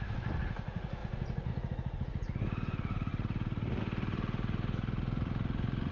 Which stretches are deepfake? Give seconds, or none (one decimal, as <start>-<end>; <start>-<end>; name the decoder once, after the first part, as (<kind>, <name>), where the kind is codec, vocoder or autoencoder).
none